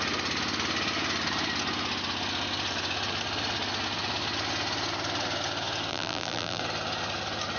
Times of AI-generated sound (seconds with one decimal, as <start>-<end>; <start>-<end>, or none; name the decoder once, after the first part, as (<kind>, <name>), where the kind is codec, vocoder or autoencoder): 5.9-6.6 (vocoder, BigVGAN v2)